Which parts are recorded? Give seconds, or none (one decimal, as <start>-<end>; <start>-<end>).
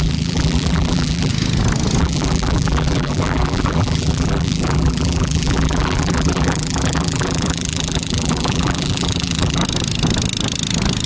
1.3-2.0; 9.6-11.1